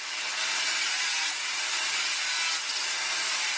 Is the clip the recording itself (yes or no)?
yes